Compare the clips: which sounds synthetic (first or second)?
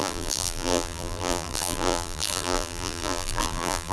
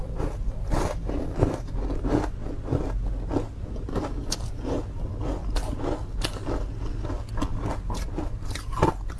first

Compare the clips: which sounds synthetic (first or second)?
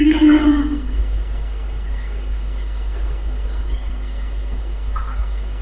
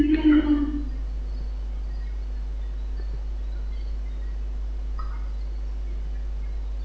first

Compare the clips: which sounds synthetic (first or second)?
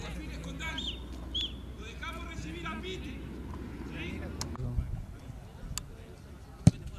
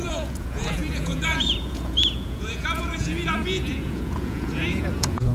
second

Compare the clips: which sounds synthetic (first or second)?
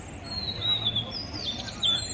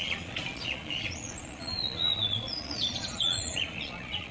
second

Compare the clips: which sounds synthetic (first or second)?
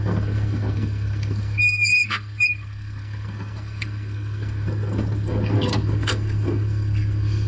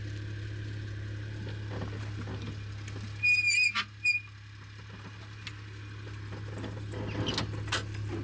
first